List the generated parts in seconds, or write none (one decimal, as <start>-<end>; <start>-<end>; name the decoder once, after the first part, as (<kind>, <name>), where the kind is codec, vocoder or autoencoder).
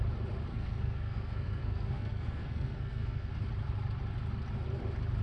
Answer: 0.5-3.3 (codec, SNAC)